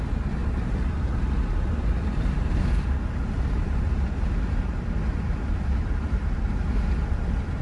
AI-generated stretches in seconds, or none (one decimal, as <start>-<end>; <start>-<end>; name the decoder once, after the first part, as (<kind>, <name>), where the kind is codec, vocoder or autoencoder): 0.4-4.8 (vocoder, BigVGAN v2); 5.7-6.5